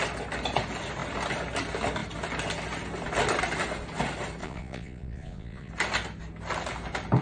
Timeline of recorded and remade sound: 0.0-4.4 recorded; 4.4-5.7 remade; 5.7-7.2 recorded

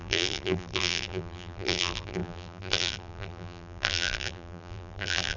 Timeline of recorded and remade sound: 0.0-5.4 remade

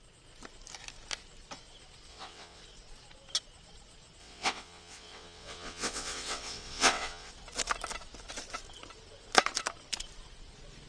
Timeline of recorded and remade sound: 0.0-2.1 recorded; 2.1-2.6 remade; 2.6-4.2 recorded; 4.2-7.3 remade; 7.3-10.9 recorded

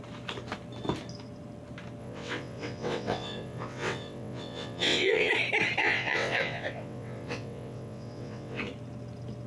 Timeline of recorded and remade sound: 0.0-2.0 recorded; 2.0-5.3 remade; 5.3-5.8 recorded; 5.8-8.6 remade; 8.6-9.5 recorded